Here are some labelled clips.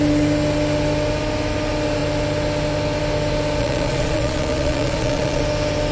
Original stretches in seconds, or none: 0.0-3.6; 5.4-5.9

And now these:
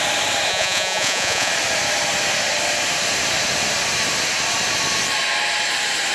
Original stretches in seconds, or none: 0.0-0.5; 1.5-6.1

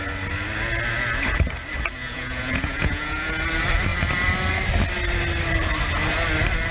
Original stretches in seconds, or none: 0.0-2.0; 3.3-6.7

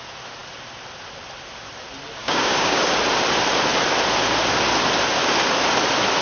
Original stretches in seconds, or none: 0.0-2.2; 2.8-6.2

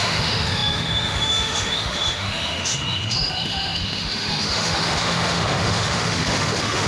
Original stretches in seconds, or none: none